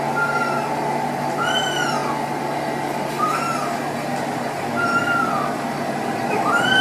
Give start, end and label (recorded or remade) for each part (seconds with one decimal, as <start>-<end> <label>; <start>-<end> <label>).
0.0-6.8 remade